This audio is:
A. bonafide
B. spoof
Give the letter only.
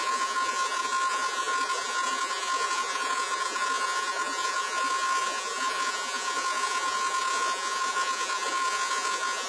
B